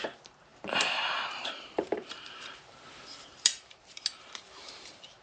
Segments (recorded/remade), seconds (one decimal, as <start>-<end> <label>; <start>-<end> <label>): 0.0-5.2 remade